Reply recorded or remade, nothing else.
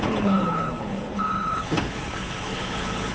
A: remade